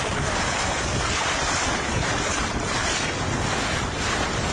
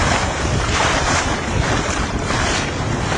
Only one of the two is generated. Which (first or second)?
second